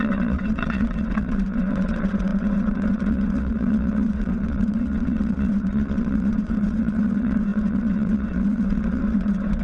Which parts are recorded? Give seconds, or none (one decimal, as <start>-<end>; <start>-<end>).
none